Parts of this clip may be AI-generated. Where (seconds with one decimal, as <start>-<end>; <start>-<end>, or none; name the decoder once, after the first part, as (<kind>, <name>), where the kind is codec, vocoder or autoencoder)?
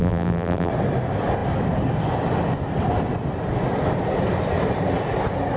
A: 0.0-0.7 (vocoder, BigVGAN v2)